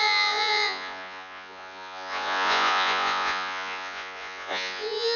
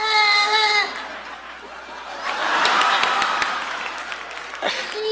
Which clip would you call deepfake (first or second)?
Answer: first